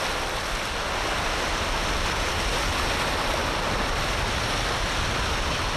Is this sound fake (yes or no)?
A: no